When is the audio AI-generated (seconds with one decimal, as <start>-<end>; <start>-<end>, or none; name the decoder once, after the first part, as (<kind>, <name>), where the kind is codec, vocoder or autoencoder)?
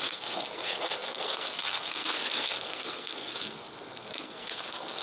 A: 0.0-5.0 (codec, SNAC)